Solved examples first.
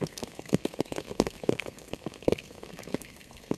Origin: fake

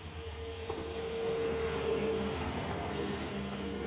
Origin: fake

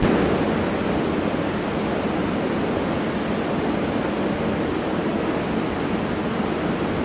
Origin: real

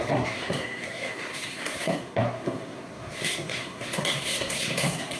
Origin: fake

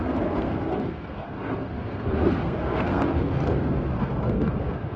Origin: fake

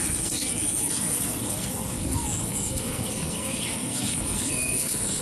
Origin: fake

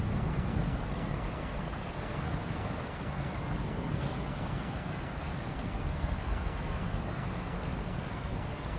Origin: fake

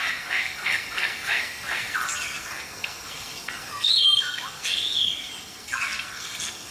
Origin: fake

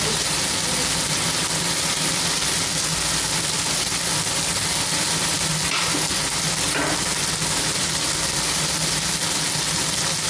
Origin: real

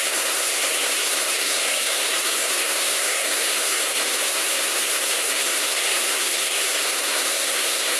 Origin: fake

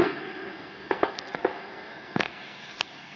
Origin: fake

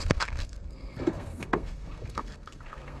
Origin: fake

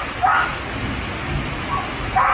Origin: real